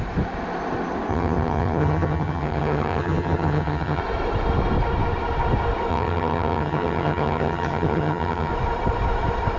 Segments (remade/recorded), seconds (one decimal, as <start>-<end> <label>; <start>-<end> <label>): 0.0-1.1 recorded; 1.1-4.0 remade; 4.0-5.9 recorded; 5.9-8.5 remade; 8.5-9.6 recorded